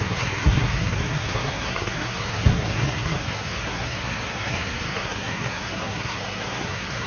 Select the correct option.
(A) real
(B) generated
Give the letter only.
B